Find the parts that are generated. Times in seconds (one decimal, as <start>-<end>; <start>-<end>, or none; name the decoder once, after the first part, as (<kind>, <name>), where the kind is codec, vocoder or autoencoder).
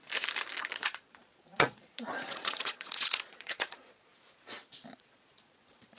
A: 0.6-4.1 (vocoder, Vocos); 4.9-6.0